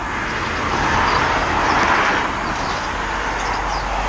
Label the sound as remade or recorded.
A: recorded